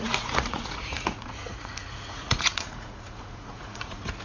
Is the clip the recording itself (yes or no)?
no